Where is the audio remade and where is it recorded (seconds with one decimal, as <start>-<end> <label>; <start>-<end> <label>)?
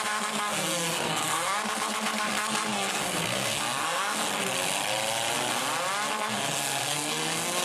0.0-4.2 remade; 4.2-6.1 recorded; 6.1-7.6 remade